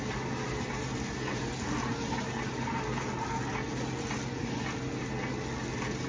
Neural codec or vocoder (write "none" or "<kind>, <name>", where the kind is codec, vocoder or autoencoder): none